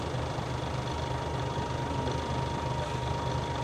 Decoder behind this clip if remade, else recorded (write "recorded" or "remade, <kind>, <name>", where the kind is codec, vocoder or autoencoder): recorded